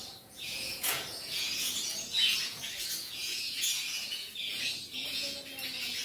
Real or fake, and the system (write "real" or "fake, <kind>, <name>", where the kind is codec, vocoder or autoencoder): fake, vocoder, Vocos